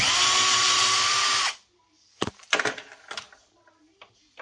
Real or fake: fake